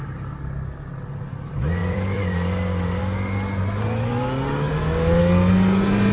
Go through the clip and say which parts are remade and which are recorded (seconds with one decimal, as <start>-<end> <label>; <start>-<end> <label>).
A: 0.0-1.8 recorded; 1.8-3.0 remade; 3.0-4.7 recorded; 4.7-5.2 remade; 5.2-6.1 recorded